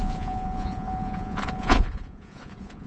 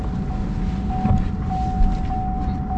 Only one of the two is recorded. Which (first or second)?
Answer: second